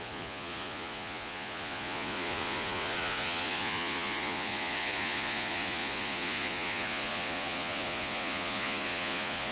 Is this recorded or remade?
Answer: remade